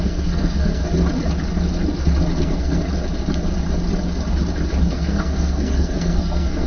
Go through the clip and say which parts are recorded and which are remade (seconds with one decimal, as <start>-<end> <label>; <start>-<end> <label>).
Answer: 0.0-0.8 remade; 0.8-2.4 recorded; 2.4-2.9 remade; 2.9-4.9 recorded; 4.9-6.7 remade